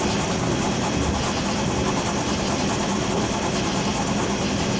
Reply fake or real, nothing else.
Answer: real